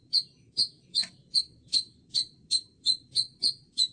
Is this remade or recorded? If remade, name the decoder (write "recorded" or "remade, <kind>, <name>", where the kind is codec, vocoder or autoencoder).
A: recorded